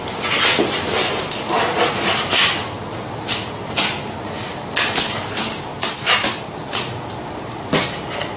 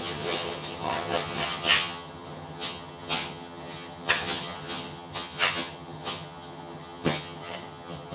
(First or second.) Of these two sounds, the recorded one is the first